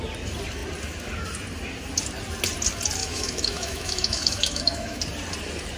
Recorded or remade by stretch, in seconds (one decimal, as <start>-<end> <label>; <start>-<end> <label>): 0.0-3.0 recorded; 3.0-5.0 remade; 5.0-5.8 recorded